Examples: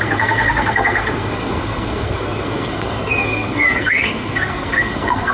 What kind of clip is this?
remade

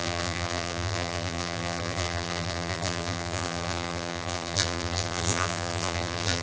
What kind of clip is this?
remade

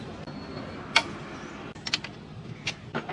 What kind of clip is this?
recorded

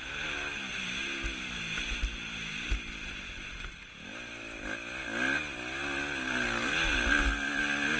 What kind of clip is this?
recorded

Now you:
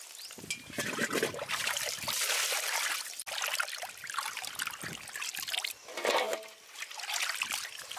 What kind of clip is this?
recorded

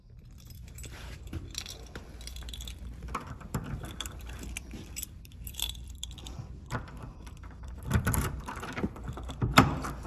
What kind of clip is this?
remade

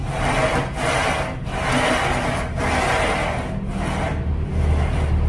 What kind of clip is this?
recorded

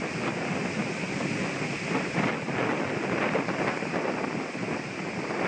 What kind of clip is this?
recorded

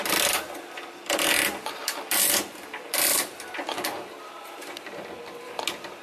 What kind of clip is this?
recorded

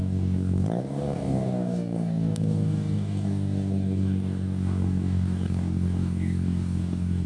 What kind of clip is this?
remade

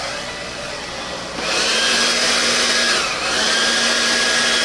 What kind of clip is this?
recorded